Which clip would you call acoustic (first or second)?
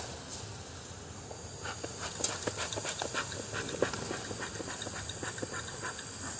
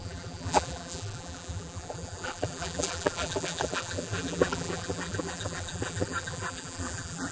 first